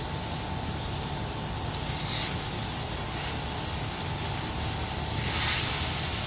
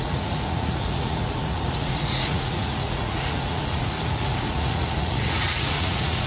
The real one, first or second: first